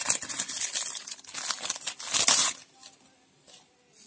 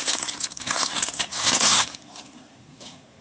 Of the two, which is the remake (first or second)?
second